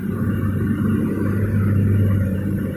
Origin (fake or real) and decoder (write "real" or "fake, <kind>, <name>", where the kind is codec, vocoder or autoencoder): real